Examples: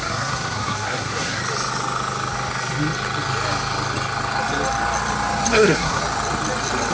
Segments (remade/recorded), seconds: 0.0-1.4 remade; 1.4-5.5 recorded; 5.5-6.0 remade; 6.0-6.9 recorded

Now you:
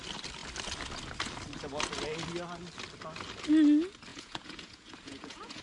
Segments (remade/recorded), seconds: 0.0-4.1 recorded; 4.1-5.6 remade

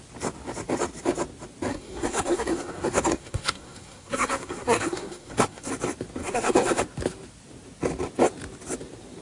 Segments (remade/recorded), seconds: 0.0-1.7 recorded; 1.7-5.7 remade; 5.7-6.2 recorded; 6.2-6.8 remade; 6.8-9.2 recorded

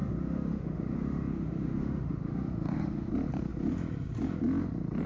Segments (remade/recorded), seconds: 0.0-3.1 remade; 3.1-5.1 recorded

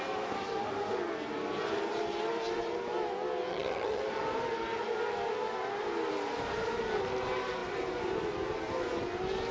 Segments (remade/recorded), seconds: 0.0-3.5 recorded; 3.5-4.0 remade; 4.0-9.5 recorded

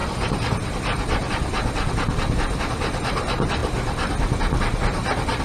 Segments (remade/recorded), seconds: 0.0-1.3 remade; 1.3-3.6 recorded; 3.6-5.4 remade

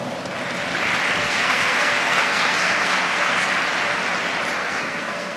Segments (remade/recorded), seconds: 0.0-1.2 recorded; 1.2-3.5 remade; 3.5-4.6 recorded; 4.6-5.4 remade

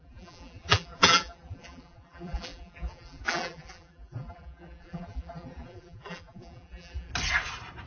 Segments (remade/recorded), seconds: 0.0-7.1 remade; 7.1-7.9 recorded